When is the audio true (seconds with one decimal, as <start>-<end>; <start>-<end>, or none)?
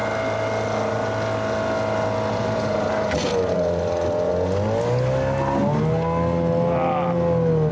0.0-2.3; 4.3-7.7